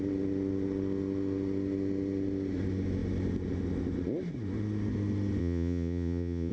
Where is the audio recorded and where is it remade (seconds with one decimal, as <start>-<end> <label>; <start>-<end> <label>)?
0.0-5.4 recorded; 5.4-6.5 remade